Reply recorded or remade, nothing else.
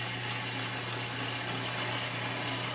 recorded